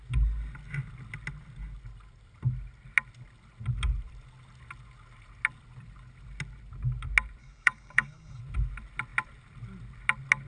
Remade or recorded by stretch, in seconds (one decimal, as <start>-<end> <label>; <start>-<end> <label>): 0.0-7.4 recorded; 7.4-8.4 remade; 8.4-10.5 recorded